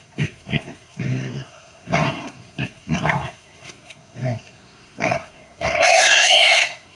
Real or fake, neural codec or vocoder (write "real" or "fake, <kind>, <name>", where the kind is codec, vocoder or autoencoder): fake, codec, SNAC